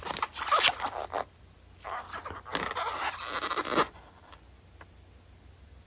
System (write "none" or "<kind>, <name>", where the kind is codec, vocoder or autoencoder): none